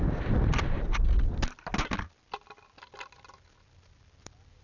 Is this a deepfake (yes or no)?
no